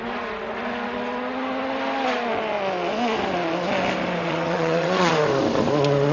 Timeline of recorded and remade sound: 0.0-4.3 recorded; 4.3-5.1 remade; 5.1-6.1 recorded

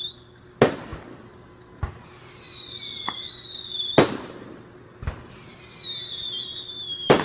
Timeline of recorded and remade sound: 0.0-7.2 recorded

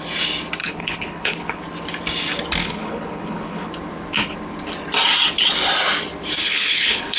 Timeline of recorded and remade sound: 0.0-0.6 recorded; 0.6-1.6 remade; 1.6-2.6 recorded; 2.6-3.7 remade; 3.7-6.4 recorded; 6.4-7.2 remade